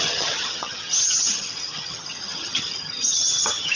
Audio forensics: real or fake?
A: fake